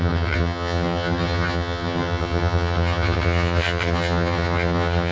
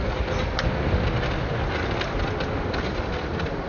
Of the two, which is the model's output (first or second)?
first